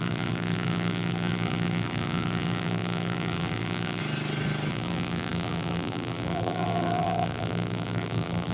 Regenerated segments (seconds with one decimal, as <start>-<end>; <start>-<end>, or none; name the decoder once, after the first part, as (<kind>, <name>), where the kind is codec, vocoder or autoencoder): 0.0-4.0 (vocoder, BigVGAN v2); 4.7-8.5